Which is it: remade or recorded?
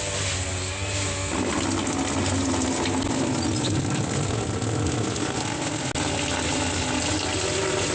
recorded